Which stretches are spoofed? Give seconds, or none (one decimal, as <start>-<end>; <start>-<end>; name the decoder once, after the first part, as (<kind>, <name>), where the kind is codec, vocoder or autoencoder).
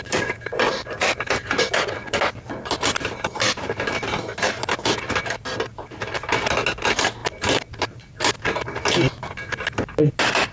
none